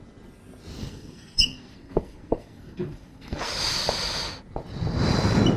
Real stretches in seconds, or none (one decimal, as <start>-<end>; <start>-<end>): 0.0-0.8; 3.5-5.6